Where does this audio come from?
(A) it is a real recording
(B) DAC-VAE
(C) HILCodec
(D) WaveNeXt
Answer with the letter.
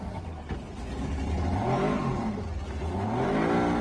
A